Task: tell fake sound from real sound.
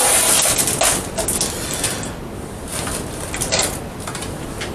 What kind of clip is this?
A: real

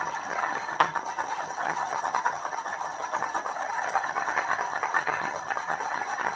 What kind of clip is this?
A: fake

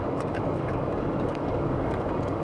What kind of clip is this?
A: fake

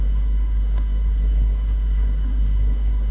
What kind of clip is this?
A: fake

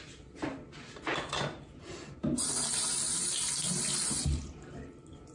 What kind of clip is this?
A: real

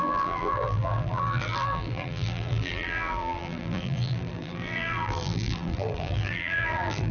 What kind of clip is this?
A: fake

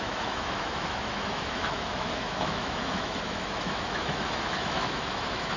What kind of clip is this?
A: fake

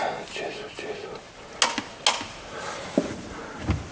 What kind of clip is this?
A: real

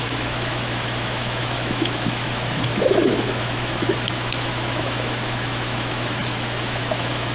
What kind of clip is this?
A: fake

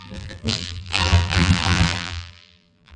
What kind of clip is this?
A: fake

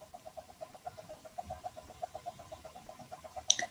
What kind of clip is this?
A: fake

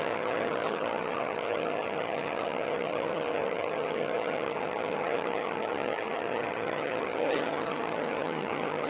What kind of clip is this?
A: fake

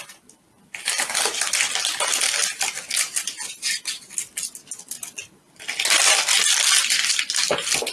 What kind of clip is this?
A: real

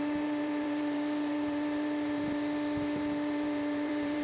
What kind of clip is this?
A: fake